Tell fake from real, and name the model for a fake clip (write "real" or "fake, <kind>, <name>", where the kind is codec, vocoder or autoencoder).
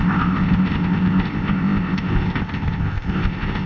fake, codec, ZipCodec